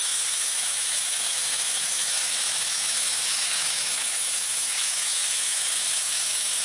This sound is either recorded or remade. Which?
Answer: remade